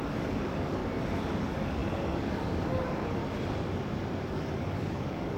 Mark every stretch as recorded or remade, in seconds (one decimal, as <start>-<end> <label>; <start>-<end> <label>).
0.0-0.8 remade; 0.8-1.4 recorded; 1.4-3.2 remade; 3.2-4.3 recorded; 4.3-5.4 remade